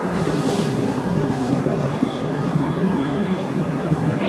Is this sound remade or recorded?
remade